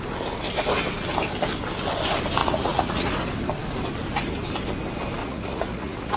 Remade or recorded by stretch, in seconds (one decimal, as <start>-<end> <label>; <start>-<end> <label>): 0.0-2.4 recorded; 2.4-3.1 remade; 3.1-5.2 recorded; 5.2-6.2 remade